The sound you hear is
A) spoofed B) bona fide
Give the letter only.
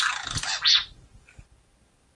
B